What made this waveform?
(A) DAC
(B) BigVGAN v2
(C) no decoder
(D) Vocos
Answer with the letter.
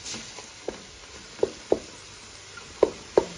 C